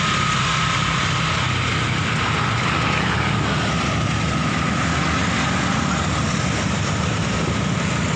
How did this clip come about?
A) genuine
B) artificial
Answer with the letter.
A